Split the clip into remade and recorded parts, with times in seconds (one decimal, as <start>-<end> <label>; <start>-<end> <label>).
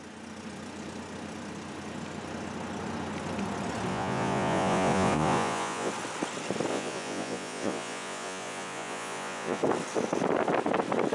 0.0-3.9 recorded; 3.9-5.9 remade; 5.9-6.7 recorded; 6.7-9.6 remade; 9.6-11.1 recorded